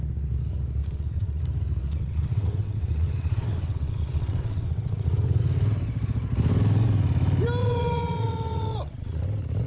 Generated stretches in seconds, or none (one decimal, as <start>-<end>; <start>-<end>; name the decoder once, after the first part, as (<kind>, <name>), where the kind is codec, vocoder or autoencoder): 0.8-1.4 (vocoder, WaveNeXt); 1.8-5.4; 7.6-9.2